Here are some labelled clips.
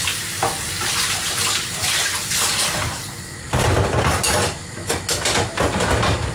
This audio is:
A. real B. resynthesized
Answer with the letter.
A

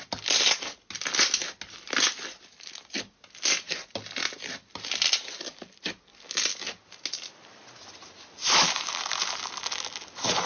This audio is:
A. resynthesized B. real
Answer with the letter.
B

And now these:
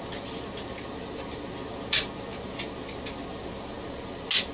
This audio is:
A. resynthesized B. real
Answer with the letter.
B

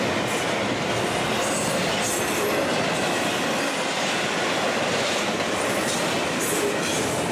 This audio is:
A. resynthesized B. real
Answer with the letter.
B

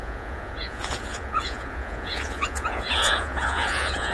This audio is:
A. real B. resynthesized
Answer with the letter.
B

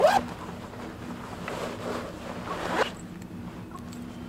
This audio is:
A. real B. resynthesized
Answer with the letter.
A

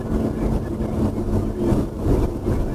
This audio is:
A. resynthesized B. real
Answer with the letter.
B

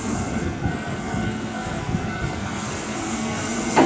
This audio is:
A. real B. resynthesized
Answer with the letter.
B